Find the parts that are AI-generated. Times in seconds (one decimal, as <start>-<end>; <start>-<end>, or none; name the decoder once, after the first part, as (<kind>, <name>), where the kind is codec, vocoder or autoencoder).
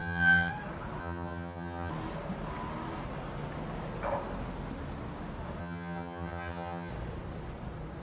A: 0.0-0.5 (vocoder, HiFi-GAN); 1.0-1.9; 5.6-6.9